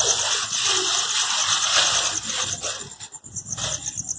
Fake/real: real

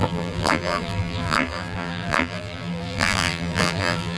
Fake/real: fake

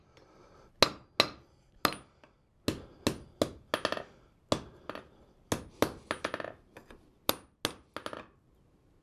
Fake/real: real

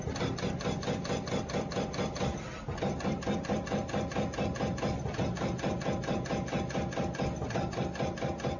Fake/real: real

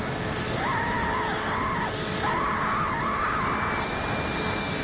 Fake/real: real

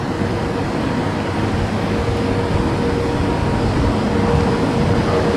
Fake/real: real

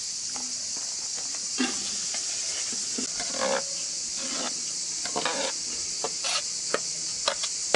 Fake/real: real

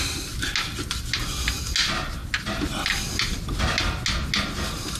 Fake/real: real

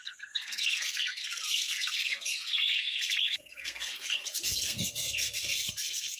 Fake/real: fake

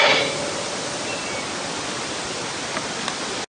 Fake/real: real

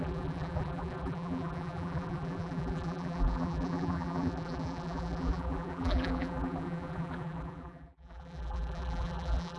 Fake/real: fake